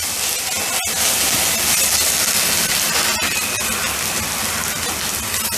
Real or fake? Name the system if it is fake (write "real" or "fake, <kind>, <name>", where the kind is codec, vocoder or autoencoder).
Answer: real